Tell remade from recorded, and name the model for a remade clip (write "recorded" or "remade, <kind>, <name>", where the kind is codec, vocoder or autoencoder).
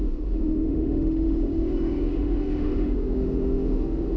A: remade, autoencoder, DAC-VAE